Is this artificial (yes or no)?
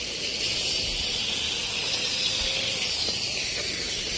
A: no